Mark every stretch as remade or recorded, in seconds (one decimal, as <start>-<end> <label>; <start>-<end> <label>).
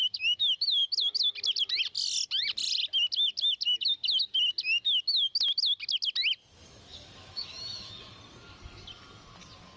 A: 0.0-6.4 recorded; 6.4-7.9 remade; 7.9-9.8 recorded